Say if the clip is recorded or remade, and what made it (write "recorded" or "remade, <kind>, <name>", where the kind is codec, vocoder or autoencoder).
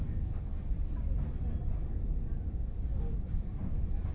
recorded